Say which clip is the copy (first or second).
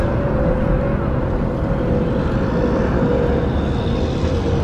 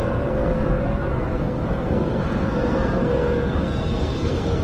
second